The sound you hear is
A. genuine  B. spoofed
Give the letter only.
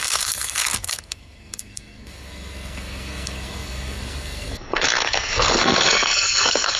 B